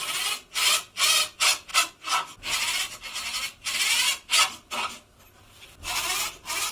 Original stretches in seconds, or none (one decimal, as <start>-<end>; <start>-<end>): 0.0-6.7